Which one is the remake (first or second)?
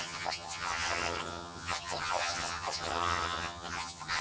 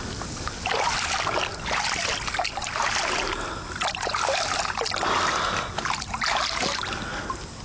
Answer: first